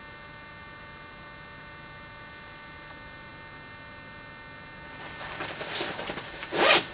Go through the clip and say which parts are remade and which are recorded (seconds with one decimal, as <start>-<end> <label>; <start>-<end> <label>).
0.0-6.9 recorded